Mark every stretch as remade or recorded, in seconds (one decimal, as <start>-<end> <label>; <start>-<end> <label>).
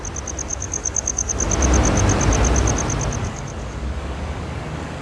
0.0-0.5 recorded; 0.5-1.3 remade; 1.3-3.2 recorded; 3.2-5.0 remade